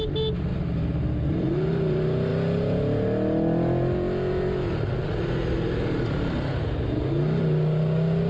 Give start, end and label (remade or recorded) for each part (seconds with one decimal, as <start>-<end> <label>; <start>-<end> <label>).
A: 0.0-8.3 recorded